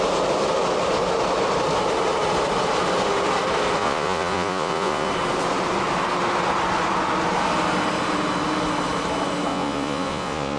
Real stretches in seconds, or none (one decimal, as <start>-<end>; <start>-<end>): 0.0-3.8; 5.1-9.5